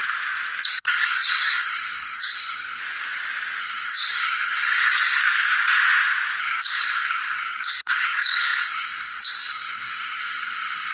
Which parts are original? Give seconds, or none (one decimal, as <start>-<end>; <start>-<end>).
0.0-0.7; 2.8-3.6; 5.2-6.4

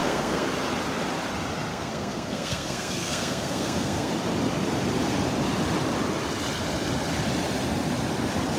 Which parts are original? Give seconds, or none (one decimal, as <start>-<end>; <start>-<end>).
0.5-1.7; 4.1-8.6

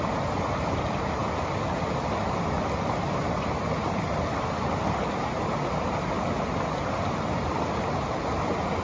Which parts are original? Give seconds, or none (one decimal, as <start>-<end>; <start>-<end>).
0.0-8.8

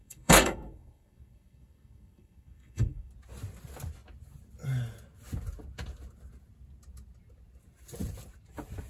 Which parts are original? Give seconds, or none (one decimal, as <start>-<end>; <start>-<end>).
3.1-8.9